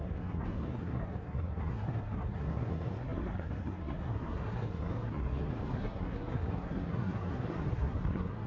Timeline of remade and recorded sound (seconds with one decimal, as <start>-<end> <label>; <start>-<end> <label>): 0.0-8.5 remade